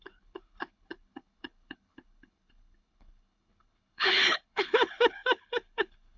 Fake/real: fake